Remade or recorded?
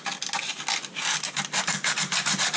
recorded